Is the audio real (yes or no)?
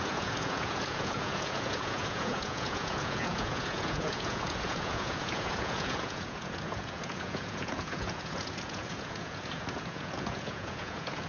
no